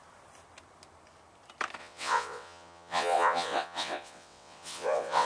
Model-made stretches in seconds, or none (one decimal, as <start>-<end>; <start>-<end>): 1.8-5.3